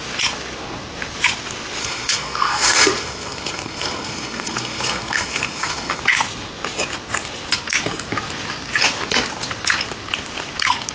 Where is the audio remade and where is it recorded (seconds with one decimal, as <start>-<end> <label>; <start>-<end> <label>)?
0.0-1.8 recorded; 1.8-6.0 remade; 6.0-10.9 recorded